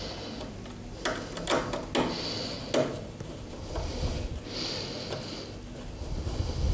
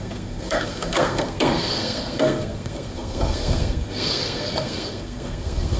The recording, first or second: first